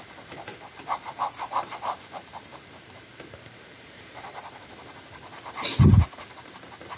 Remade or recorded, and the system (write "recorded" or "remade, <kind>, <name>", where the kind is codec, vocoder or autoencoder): remade, vocoder, BigVGAN v2